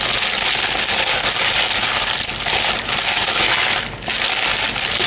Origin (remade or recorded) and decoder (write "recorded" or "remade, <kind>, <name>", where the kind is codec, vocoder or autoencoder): recorded